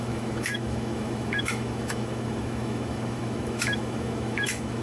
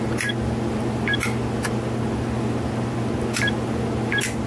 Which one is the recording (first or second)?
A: second